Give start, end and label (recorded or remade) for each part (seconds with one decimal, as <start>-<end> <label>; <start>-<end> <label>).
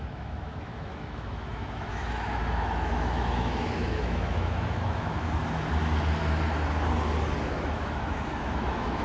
0.0-5.4 remade; 5.4-7.4 recorded; 7.4-9.0 remade